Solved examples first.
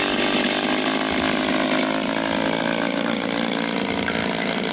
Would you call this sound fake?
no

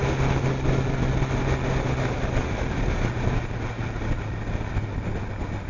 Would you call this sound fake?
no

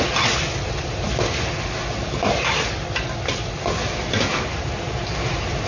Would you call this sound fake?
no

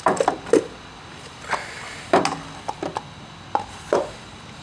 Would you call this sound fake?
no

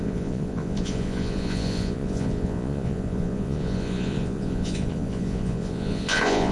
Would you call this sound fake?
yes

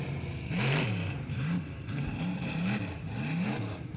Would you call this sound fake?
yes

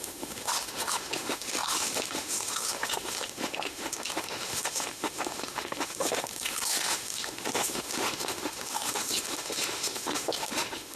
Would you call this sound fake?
yes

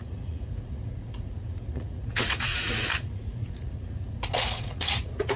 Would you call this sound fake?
yes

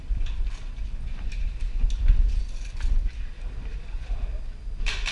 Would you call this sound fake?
no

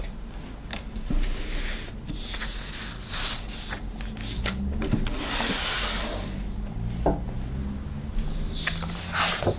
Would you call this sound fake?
no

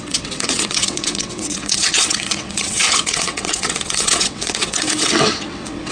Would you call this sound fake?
yes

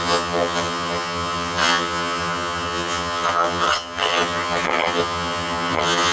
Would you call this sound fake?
yes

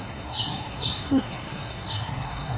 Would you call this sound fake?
yes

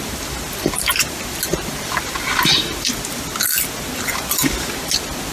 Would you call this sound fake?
no